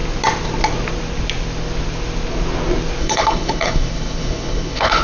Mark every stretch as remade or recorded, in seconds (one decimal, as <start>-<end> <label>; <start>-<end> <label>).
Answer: 0.0-3.0 recorded; 3.0-5.0 remade